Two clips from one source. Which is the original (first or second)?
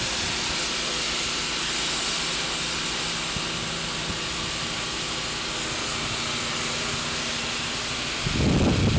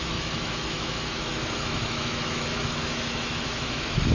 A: first